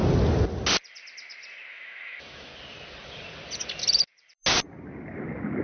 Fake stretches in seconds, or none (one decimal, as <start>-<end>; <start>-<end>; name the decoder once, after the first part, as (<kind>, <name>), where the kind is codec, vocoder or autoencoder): 1.7-2.5 (autoencoder, DAC-VAE)